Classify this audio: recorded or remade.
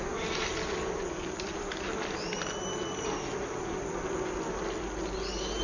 recorded